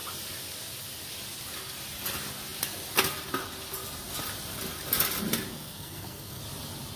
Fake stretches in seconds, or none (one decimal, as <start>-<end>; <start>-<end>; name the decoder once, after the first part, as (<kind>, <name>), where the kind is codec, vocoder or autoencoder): 5.5-6.4 (codec, SNAC)